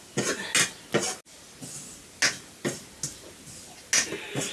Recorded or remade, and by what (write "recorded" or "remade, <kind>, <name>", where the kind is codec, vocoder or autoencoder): recorded